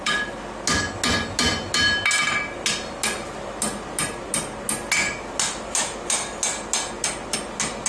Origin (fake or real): real